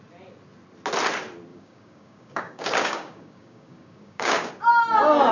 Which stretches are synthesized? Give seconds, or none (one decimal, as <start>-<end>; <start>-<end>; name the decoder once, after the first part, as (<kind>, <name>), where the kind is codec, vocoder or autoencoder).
1.5-4.5 (codec, DAC)